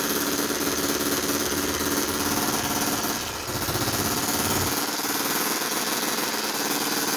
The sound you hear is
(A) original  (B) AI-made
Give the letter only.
A